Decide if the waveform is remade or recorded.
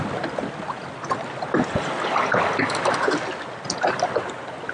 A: recorded